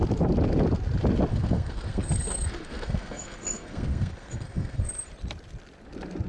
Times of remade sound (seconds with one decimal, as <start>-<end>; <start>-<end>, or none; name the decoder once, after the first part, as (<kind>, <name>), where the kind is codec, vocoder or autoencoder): 1.3-4.9 (codec, SNAC)

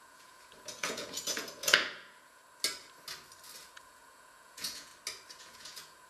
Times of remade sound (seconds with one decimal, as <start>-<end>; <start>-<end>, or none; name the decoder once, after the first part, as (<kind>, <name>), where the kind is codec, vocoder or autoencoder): 0.0-2.4 (vocoder, Vocos); 3.6-4.9; 5.4-6.1

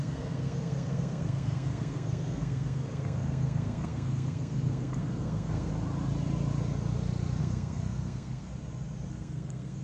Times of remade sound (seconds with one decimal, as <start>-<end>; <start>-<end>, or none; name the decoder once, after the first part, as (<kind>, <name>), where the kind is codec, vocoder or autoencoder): 0.0-5.7 (codec, SNAC); 7.4-8.5; 9.1-9.8

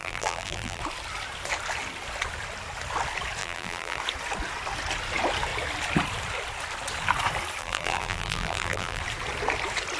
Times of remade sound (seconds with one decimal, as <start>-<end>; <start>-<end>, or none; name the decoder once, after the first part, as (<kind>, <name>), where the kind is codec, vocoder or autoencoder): 0.0-0.8 (vocoder, BigVGAN v2); 3.4-4.0; 7.6-9.0

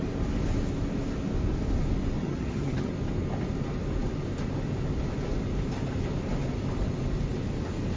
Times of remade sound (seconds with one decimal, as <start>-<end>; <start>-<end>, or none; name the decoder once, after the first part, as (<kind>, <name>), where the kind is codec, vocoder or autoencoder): 2.2-2.9 (vocoder, HiFi-GAN)